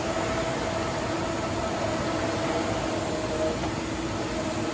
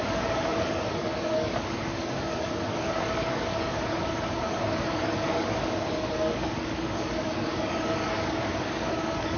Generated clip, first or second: second